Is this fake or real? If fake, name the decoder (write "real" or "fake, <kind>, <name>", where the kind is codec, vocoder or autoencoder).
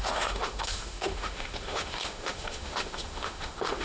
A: fake, autoencoder, DAC-VAE